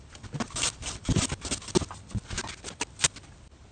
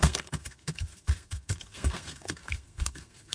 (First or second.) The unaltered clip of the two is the first